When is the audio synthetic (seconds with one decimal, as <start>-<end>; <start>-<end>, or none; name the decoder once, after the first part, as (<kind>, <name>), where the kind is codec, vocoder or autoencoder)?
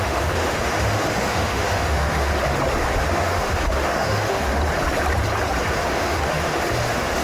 0.0-2.3 (autoencoder, DAC-VAE); 3.0-4.6; 5.7-7.2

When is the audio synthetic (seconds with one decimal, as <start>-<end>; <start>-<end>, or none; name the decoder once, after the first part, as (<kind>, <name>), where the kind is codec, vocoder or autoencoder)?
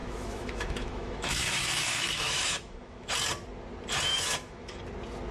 0.0-3.1 (autoencoder, DAC-VAE); 4.1-4.8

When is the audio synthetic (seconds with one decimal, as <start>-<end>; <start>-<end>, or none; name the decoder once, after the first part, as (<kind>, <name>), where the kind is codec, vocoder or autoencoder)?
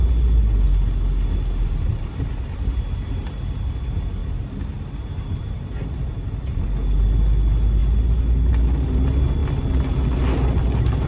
none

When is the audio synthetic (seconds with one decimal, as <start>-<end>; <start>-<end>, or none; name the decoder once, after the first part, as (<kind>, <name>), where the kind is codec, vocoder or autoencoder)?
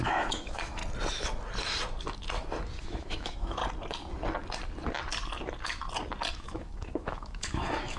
0.0-0.8 (autoencoder, DAC-VAE); 2.8-3.6; 6.3-8.0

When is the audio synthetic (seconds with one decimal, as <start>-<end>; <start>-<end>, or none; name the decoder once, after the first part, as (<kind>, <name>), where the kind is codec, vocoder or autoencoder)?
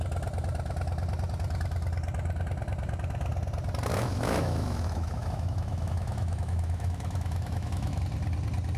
3.9-8.0 (autoencoder, DAC-VAE)